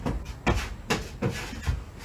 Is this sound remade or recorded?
recorded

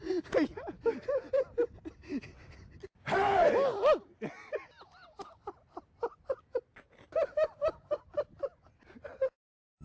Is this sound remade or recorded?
recorded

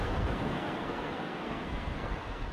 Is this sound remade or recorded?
remade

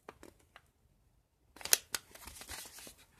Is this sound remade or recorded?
recorded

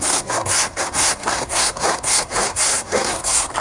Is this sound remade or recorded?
remade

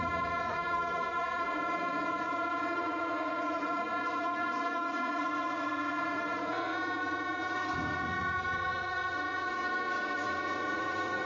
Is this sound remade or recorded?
remade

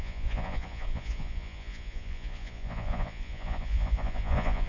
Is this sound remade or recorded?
remade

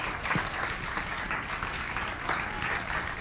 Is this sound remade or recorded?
remade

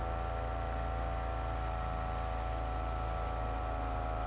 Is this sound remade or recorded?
recorded